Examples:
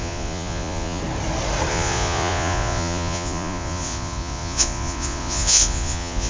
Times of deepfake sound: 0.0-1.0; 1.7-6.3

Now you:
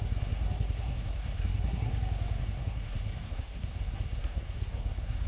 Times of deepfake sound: 0.0-1.9; 2.4-5.3

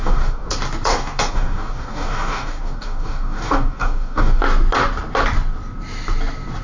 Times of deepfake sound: 0.0-0.5; 0.9-4.4

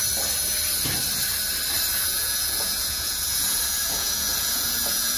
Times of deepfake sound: 1.9-5.2

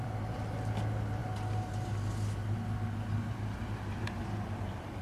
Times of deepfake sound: none